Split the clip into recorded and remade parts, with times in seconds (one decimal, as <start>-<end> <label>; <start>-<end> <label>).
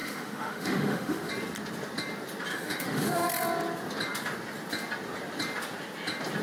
0.0-1.3 remade; 1.3-2.5 recorded; 2.5-3.3 remade; 3.3-6.4 recorded